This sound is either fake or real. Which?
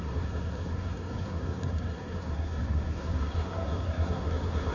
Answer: fake